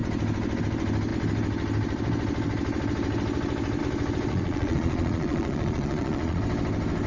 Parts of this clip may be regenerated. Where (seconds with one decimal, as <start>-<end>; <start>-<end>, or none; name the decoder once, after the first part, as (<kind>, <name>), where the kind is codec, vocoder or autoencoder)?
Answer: 4.3-6.4 (vocoder, Vocos)